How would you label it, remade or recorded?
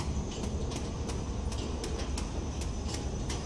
recorded